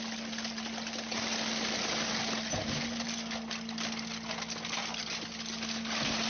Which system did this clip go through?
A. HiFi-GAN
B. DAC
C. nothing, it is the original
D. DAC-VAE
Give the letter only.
C